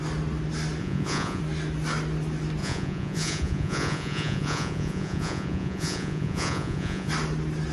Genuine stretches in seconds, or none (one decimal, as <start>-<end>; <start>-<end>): 0.0-0.8; 1.4-2.6; 7.1-7.7